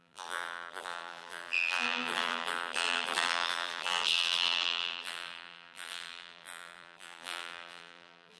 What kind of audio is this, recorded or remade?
remade